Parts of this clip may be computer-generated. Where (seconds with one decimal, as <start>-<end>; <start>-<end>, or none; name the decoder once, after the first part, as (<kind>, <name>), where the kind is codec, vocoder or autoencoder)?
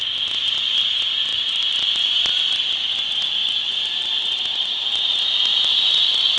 1.3-2.9 (vocoder, BigVGAN v2); 3.4-4.8; 5.5-6.4